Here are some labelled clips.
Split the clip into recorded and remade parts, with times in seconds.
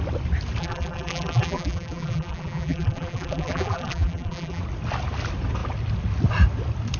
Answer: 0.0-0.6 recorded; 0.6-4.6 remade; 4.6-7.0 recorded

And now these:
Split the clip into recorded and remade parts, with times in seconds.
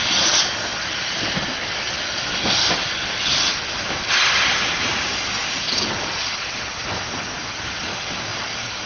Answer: 0.0-0.7 recorded; 0.7-2.3 remade; 2.3-7.9 recorded; 7.9-8.9 remade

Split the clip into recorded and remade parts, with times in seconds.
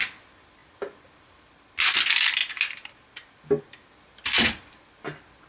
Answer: 0.0-5.5 recorded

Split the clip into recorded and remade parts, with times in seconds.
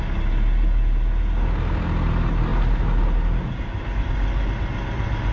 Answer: 0.0-5.3 recorded